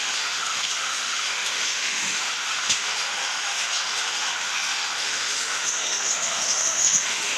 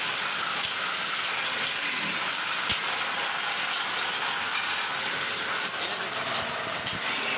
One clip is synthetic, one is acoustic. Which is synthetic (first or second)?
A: first